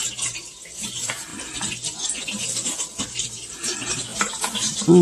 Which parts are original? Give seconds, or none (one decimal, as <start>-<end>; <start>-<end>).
1.3-3.0